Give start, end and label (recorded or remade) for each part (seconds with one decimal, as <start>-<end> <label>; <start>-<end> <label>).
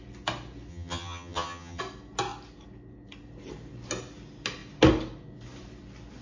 0.0-0.7 recorded; 0.7-1.8 remade; 1.8-6.2 recorded